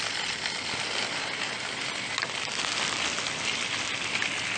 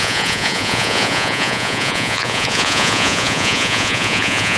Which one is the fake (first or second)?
second